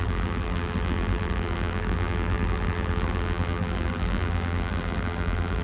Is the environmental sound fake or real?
fake